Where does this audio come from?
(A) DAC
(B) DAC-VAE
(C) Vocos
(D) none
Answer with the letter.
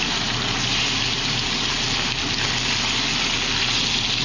D